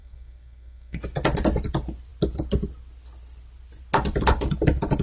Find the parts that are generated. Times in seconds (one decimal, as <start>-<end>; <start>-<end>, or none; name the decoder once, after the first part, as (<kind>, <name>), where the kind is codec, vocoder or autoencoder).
0.0-1.0 (codec, SNAC)